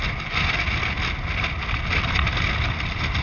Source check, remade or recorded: recorded